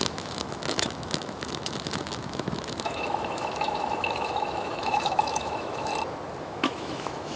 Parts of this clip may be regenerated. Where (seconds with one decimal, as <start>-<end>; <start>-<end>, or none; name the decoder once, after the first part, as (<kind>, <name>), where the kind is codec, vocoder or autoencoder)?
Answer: 0.0-5.9 (autoencoder, DAC-VAE); 6.4-7.4